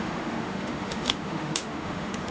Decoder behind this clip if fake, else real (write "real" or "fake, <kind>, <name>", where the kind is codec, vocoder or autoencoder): fake, autoencoder, DAC-VAE